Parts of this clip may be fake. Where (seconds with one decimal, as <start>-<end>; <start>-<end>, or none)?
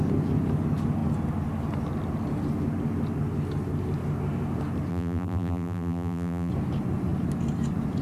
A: 4.9-6.5